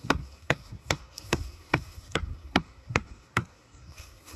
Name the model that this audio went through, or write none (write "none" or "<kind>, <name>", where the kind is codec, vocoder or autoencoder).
codec, SNAC